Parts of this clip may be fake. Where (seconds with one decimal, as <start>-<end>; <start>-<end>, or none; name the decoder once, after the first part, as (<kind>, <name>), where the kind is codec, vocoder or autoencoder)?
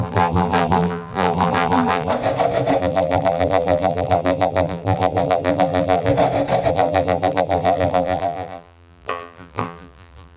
0.0-2.1 (vocoder, BigVGAN v2); 2.8-6.1; 6.7-10.4